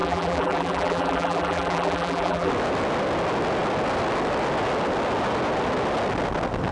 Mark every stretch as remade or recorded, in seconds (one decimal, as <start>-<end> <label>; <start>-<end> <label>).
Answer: 0.0-2.5 remade; 2.5-6.7 recorded